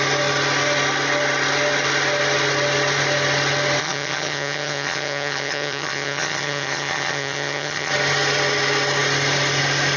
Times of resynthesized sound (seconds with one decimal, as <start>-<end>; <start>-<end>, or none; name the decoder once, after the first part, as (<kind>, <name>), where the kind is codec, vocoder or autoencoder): 3.8-7.9 (vocoder, HiFi-GAN)